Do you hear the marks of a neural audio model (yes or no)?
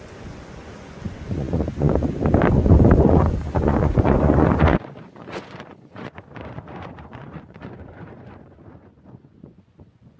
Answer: yes